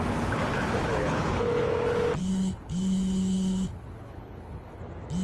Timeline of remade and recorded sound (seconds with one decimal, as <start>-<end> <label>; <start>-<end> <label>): 0.0-0.9 recorded; 0.9-1.5 remade; 1.5-2.2 recorded; 2.2-4.8 remade; 4.8-5.2 recorded